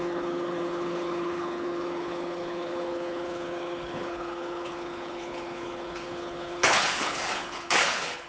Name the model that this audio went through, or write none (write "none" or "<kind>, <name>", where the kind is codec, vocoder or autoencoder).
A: codec, HILCodec